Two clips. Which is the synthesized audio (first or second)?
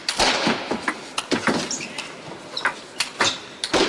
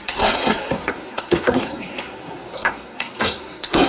second